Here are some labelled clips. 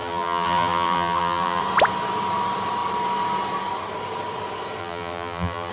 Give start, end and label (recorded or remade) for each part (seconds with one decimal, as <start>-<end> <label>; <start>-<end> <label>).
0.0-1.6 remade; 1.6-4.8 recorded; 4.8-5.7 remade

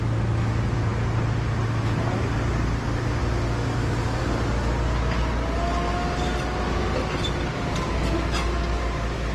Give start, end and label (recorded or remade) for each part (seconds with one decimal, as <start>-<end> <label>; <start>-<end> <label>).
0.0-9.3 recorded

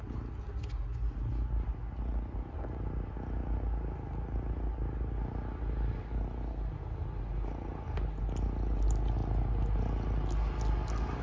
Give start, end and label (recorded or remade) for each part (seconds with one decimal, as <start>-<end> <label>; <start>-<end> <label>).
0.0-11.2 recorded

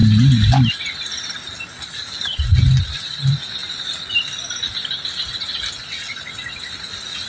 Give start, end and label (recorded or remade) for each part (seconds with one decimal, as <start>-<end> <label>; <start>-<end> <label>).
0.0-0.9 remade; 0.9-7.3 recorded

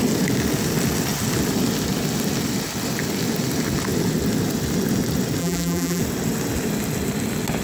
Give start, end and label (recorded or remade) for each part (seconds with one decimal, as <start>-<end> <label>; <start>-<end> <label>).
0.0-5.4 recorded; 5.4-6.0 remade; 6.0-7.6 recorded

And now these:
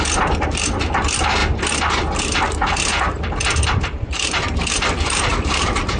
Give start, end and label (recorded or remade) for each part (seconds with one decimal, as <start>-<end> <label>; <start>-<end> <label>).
0.0-1.4 remade; 1.4-2.2 recorded; 2.2-6.0 remade

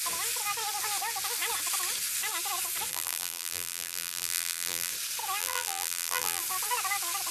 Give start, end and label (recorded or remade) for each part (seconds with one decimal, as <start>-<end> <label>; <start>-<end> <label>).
0.0-2.9 recorded; 2.9-4.9 remade; 4.9-5.4 recorded; 5.4-6.4 remade; 6.4-7.3 recorded